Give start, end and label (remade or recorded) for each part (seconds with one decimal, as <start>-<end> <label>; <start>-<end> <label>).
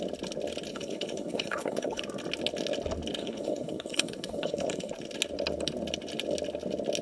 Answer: 0.0-0.7 recorded; 0.7-2.0 remade; 2.0-3.2 recorded; 3.2-4.9 remade; 4.9-7.0 recorded